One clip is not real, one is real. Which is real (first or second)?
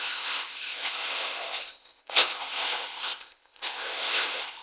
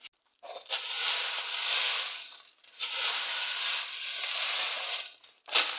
second